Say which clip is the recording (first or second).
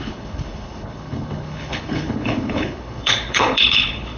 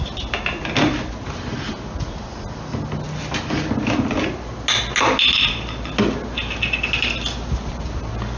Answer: second